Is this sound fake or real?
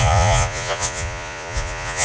fake